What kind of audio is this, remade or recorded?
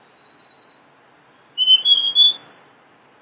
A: recorded